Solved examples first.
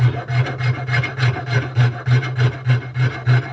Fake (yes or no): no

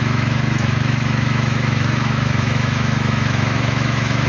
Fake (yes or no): yes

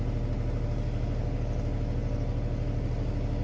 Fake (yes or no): no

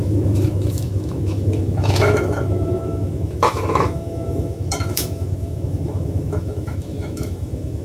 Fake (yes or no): yes